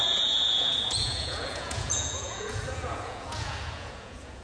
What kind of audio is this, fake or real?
fake